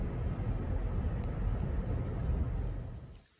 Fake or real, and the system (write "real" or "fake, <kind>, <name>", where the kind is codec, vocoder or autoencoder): real